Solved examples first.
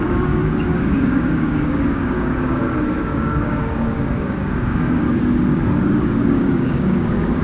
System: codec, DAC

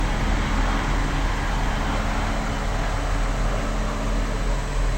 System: none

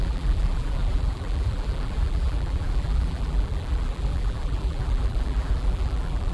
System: vocoder, BigVGAN v2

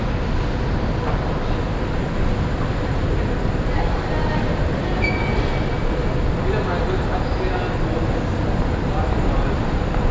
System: none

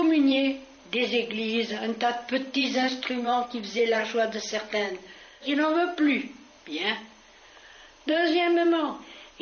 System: vocoder, BigVGAN v2